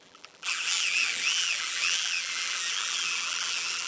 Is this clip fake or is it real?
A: fake